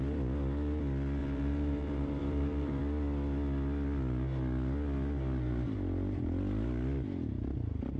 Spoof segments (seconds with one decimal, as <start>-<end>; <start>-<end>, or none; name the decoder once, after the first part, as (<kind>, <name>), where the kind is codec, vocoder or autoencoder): 1.2-2.8 (vocoder, BigVGAN v2)